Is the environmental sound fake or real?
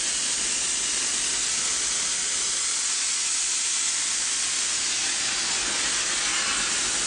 real